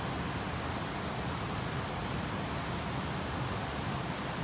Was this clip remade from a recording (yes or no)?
no